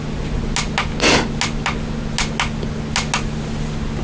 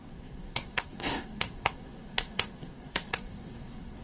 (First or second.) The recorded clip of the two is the first